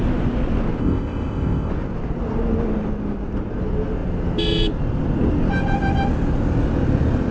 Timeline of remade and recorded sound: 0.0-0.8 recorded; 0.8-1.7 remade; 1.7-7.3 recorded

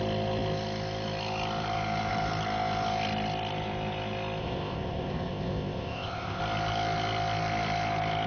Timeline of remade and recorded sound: 0.0-4.4 recorded; 4.4-6.4 remade; 6.4-8.3 recorded

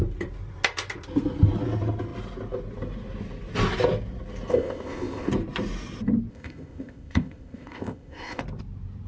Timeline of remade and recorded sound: 0.0-4.5 recorded; 4.5-5.3 remade; 5.3-6.3 recorded; 6.3-8.4 remade; 8.4-9.1 recorded

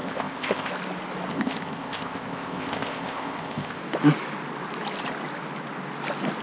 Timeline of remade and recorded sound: 0.0-0.7 remade; 0.7-1.3 recorded; 1.3-3.8 remade; 3.8-6.4 recorded

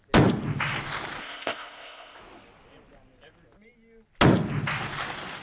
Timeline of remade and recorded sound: 0.0-1.2 recorded; 1.2-2.2 remade; 2.2-5.4 recorded

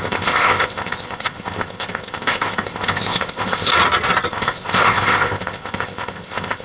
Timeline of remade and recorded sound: 0.0-3.7 remade; 3.7-4.3 recorded; 4.3-6.6 remade

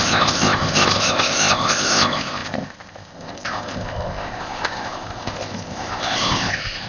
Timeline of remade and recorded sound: 0.0-6.9 remade

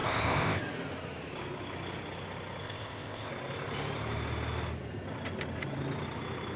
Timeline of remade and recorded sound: 0.0-0.6 remade; 0.6-2.6 recorded; 2.6-3.3 remade; 3.3-6.6 recorded